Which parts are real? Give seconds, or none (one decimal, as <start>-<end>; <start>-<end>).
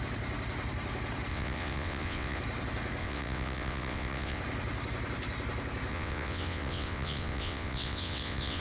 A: 0.0-1.3; 2.4-3.0; 4.4-5.9